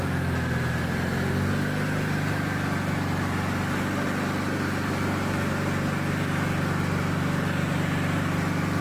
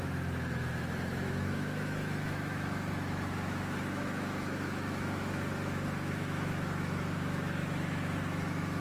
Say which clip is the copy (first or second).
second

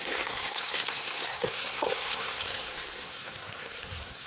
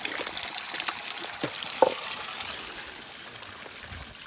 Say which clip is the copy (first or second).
first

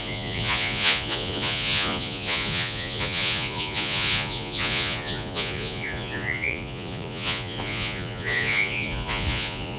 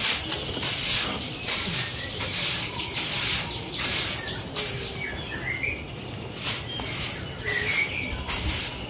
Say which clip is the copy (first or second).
first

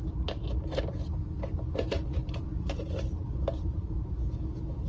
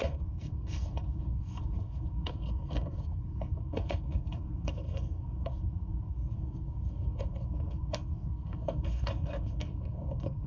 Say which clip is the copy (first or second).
second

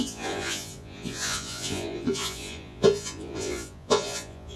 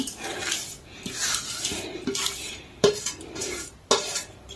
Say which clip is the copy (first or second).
first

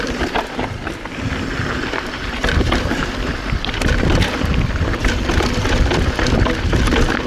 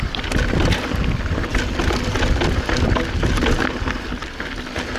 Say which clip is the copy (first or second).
first